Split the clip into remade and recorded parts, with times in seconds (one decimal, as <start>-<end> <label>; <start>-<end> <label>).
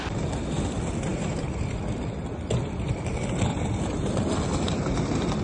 0.0-1.1 recorded; 1.1-1.8 remade; 1.8-3.5 recorded; 3.5-4.3 remade; 4.3-5.4 recorded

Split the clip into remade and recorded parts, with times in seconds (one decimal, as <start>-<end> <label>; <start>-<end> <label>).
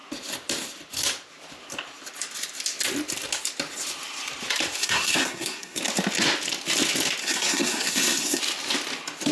0.0-4.8 recorded; 4.8-5.8 remade; 5.8-7.2 recorded; 7.2-8.4 remade; 8.4-9.3 recorded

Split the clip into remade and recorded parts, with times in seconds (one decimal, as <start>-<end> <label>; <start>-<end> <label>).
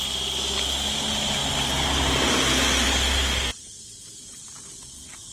0.0-5.3 recorded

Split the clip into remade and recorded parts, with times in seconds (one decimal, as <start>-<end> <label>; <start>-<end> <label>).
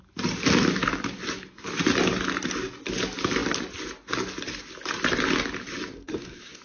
0.0-5.9 recorded; 5.9-6.6 remade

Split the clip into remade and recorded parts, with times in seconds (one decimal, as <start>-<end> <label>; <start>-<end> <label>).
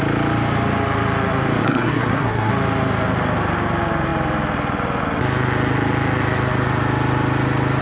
0.0-1.6 recorded; 1.6-2.5 remade; 2.5-7.8 recorded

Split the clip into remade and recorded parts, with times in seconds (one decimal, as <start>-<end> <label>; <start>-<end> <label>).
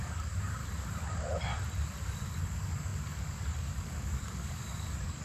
0.0-0.6 remade; 0.6-2.4 recorded; 2.4-5.2 remade